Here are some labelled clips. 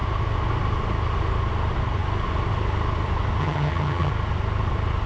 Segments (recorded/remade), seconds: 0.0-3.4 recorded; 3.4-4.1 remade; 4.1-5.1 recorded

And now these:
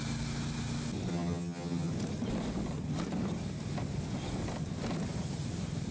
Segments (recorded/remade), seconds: 0.0-1.1 recorded; 1.1-1.9 remade; 1.9-5.9 recorded

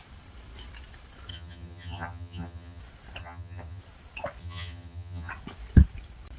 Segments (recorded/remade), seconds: 0.0-1.3 recorded; 1.3-2.8 remade; 2.8-3.2 recorded; 3.2-3.8 remade; 3.8-4.4 recorded; 4.4-5.3 remade; 5.3-6.4 recorded